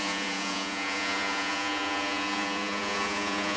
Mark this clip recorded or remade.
remade